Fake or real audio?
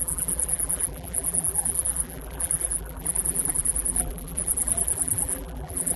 fake